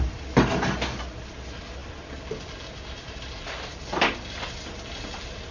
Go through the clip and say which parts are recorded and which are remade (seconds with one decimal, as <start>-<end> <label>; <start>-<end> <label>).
0.0-5.5 recorded